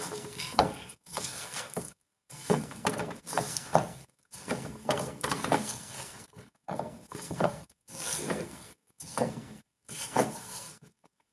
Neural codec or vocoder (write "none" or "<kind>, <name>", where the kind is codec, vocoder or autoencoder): codec, SNAC